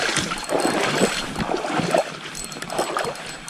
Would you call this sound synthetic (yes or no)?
no